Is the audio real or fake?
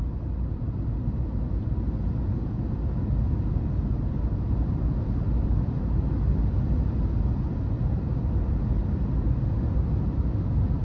real